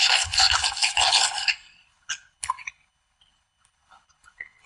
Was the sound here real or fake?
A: fake